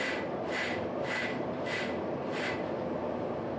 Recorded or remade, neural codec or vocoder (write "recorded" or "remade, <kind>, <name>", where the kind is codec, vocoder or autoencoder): remade, vocoder, BigVGAN v2